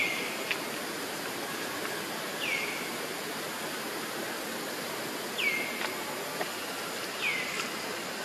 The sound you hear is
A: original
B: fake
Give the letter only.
A